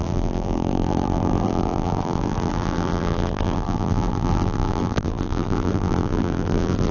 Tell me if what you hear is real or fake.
fake